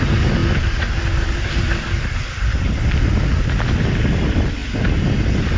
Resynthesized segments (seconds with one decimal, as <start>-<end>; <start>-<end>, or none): none